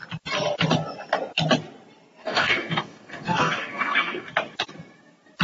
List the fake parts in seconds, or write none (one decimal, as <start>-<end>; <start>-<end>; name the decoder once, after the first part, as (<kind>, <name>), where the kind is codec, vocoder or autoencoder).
2.2-4.3 (codec, DAC)